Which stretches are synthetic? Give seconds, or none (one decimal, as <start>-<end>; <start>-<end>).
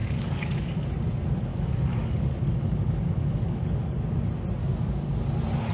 0.0-0.9; 1.5-4.0; 4.6-5.2